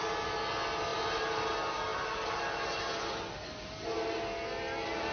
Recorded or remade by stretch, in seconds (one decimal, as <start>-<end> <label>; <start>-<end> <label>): 0.0-0.9 recorded; 0.9-1.5 remade; 1.5-1.9 recorded; 1.9-3.2 remade; 3.2-5.1 recorded